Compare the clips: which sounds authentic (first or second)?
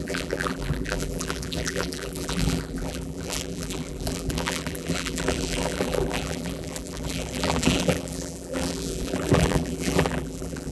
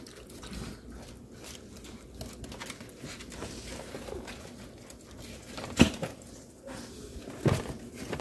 second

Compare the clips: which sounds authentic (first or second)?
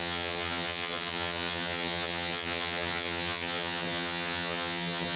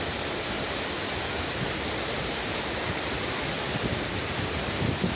second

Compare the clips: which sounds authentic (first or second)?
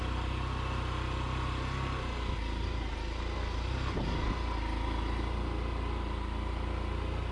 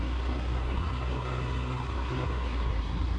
first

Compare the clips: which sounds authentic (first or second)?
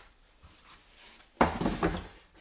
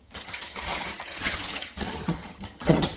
first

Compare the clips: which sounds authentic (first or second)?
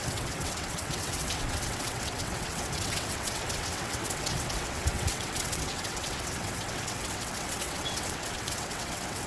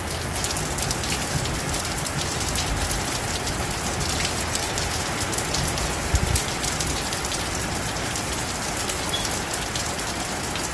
second